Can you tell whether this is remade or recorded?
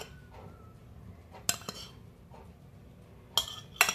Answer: recorded